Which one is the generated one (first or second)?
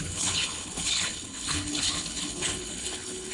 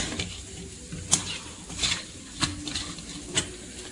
first